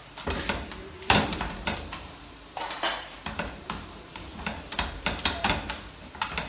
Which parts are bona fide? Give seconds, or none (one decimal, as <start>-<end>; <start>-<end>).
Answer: 0.0-0.8; 4.7-6.5

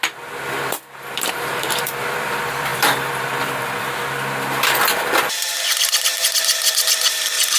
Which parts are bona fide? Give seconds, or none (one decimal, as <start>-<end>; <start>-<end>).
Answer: 0.0-0.7

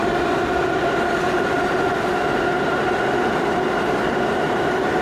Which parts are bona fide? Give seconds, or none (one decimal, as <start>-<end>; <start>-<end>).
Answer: 1.2-5.0

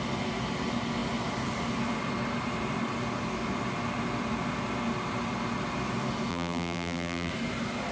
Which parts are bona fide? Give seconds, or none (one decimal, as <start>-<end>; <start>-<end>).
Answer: 0.0-6.3; 7.3-7.9

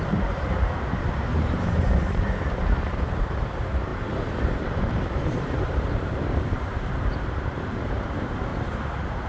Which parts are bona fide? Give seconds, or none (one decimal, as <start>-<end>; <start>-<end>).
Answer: 8.5-9.3